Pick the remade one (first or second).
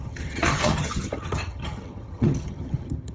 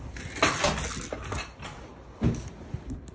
first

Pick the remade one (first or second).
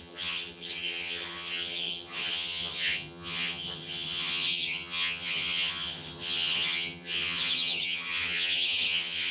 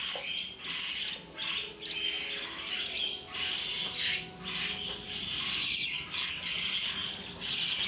first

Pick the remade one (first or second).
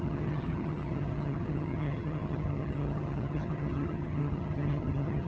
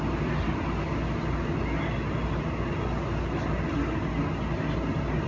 first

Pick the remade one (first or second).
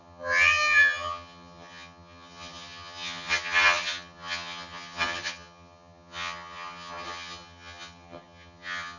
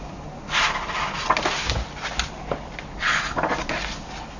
first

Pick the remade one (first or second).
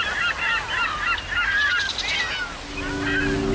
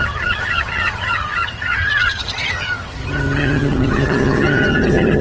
second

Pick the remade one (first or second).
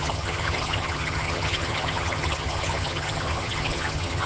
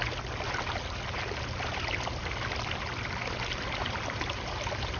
first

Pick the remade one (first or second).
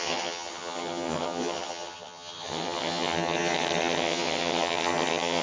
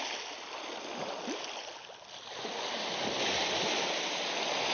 first